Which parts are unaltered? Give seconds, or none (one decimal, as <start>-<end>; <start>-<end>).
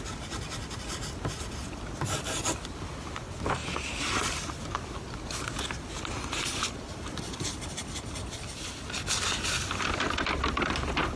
0.0-11.2